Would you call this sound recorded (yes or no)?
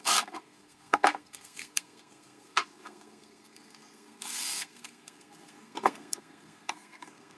no